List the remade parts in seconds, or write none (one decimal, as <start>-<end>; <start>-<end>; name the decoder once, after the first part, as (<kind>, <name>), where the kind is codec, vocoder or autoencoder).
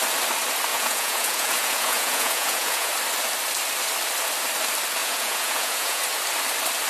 0.7-2.9 (vocoder, Vocos); 5.0-6.0